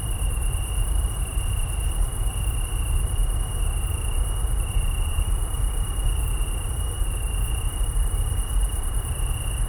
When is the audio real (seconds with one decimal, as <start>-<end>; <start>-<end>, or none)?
3.2-5.1